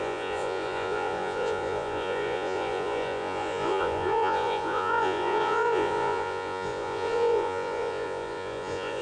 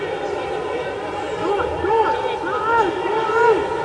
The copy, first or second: first